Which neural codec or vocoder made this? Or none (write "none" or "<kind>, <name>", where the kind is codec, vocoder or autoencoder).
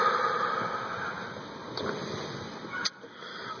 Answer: none